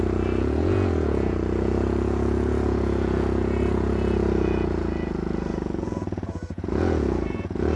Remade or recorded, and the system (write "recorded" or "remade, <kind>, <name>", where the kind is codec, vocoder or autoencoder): remade, vocoder, Vocos